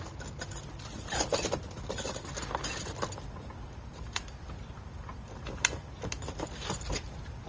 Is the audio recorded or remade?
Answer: recorded